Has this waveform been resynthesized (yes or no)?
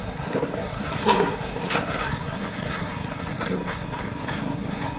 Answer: yes